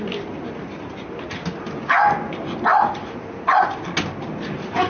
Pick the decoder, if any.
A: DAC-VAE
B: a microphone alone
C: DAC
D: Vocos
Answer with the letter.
B